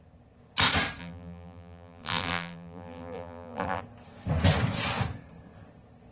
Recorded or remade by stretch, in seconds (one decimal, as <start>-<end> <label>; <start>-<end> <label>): 0.0-1.0 recorded; 1.0-3.8 remade; 3.8-6.1 recorded